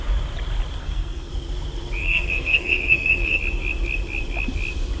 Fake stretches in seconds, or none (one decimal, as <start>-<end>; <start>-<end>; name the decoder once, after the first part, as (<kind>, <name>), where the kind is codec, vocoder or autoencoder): 0.8-1.3 (codec, SNAC); 2.0-3.4